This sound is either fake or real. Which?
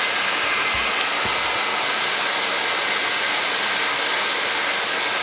real